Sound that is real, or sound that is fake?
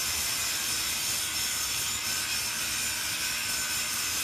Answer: real